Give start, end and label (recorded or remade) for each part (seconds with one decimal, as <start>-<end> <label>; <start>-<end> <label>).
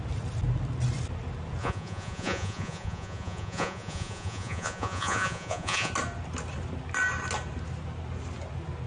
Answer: 0.0-1.6 recorded; 1.6-5.9 remade; 5.9-8.9 recorded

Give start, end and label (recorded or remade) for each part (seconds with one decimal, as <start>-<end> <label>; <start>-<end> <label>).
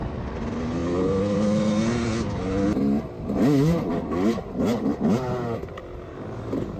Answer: 0.0-3.9 recorded; 3.9-4.4 remade; 4.4-6.1 recorded; 6.1-6.8 remade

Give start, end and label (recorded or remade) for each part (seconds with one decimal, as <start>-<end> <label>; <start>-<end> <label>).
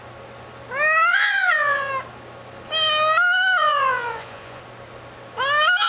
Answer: 0.0-1.1 recorded; 1.1-1.9 remade; 1.9-3.6 recorded; 3.6-4.6 remade; 4.6-5.9 recorded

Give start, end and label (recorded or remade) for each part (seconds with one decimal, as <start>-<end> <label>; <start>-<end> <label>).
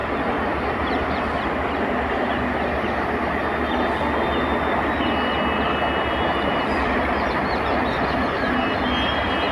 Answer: 0.0-9.5 recorded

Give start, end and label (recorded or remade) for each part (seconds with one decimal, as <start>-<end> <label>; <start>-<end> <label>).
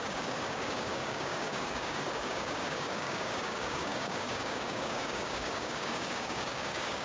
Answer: 0.0-7.0 remade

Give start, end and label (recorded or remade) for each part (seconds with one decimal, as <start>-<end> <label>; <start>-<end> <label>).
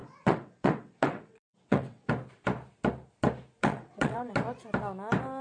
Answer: 0.0-2.1 remade; 2.1-3.6 recorded; 3.6-4.3 remade; 4.3-5.4 recorded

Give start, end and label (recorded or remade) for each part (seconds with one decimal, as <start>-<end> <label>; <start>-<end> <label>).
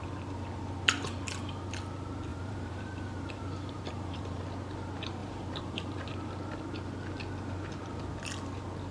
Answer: 0.0-2.3 recorded; 2.3-4.4 remade; 4.4-5.2 recorded; 5.2-6.1 remade; 6.1-8.9 recorded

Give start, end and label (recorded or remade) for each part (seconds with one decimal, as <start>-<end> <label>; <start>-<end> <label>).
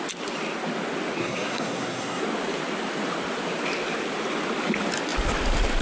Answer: 0.0-1.2 recorded; 1.2-2.2 remade; 2.2-5.8 recorded